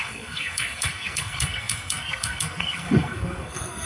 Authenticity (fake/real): fake